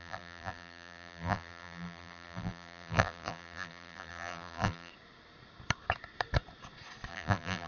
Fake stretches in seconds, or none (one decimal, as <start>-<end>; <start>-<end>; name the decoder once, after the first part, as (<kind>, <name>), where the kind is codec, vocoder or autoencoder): 0.0-4.9 (vocoder, BigVGAN v2); 7.1-7.7